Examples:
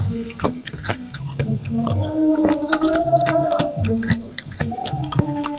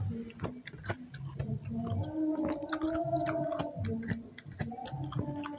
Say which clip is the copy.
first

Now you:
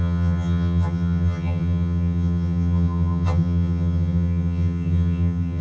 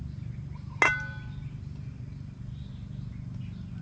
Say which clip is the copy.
first